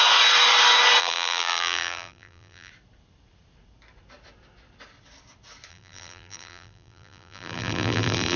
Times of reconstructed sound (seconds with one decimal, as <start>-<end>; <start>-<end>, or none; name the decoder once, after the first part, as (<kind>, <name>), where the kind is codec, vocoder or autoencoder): 1.0-2.7 (vocoder, BigVGAN v2); 5.7-8.4